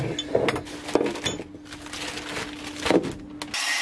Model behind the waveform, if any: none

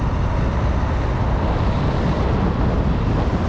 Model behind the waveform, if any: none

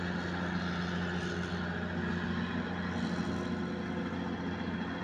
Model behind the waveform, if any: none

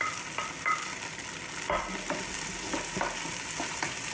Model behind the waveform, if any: none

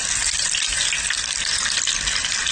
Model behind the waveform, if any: none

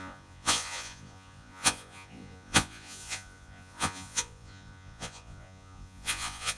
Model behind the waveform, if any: vocoder, Vocos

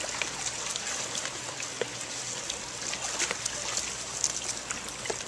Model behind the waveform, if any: none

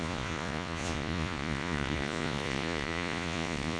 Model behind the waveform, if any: vocoder, Vocos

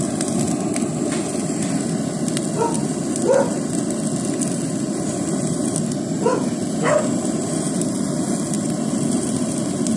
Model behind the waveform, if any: none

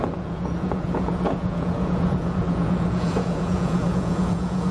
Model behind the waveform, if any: vocoder, Vocos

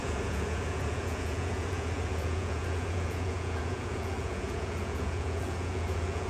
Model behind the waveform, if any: vocoder, Vocos